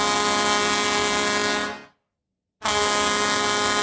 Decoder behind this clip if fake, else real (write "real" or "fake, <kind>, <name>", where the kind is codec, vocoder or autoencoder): real